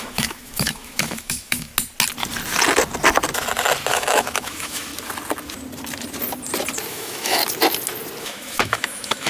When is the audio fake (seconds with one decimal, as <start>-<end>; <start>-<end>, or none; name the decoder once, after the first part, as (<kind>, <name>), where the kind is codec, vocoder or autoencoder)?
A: 0.0-1.7 (autoencoder, DAC-VAE); 3.9-4.9; 6.9-7.4; 8.2-9.3